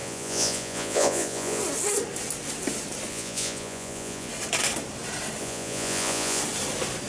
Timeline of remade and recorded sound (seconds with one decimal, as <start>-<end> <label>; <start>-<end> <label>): 0.0-1.6 remade; 1.6-3.1 recorded; 3.1-4.3 remade; 4.3-5.4 recorded; 5.4-6.4 remade; 6.4-7.1 recorded